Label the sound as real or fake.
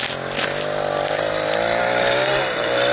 real